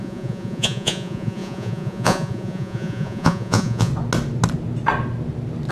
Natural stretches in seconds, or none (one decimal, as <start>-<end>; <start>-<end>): 3.9-5.7